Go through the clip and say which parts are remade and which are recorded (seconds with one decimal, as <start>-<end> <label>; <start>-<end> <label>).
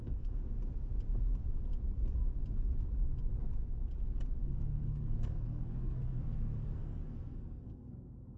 0.0-0.4 remade; 0.4-4.4 recorded; 4.4-8.4 remade